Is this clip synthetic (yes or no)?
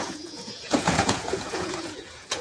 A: yes